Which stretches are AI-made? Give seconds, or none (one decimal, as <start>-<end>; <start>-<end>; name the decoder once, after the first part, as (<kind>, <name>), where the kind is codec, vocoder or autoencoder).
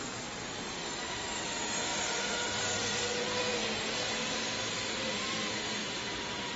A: 1.9-2.6 (vocoder, BigVGAN v2); 5.8-6.6